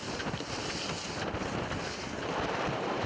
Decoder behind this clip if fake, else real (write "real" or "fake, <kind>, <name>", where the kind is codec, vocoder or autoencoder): real